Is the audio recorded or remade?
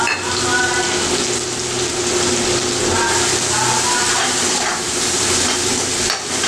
recorded